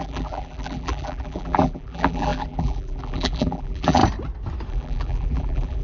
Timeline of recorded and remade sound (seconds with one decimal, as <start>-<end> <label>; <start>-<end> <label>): 0.0-4.0 remade; 4.0-4.7 recorded; 4.7-5.8 remade